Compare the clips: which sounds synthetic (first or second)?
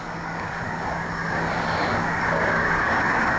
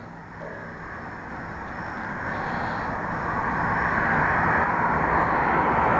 first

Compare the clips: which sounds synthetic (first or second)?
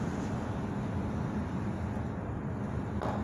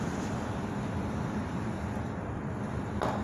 second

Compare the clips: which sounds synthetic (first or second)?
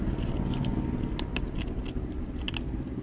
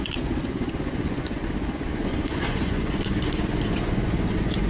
second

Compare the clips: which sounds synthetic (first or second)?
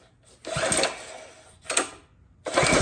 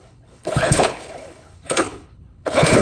second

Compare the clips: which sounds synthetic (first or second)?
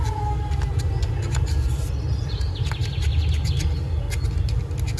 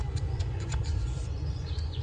second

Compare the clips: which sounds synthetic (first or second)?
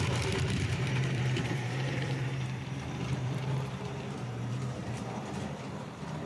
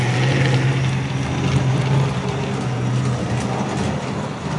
first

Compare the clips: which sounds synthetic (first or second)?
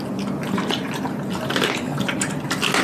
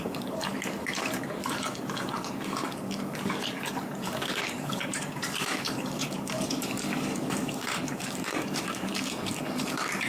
second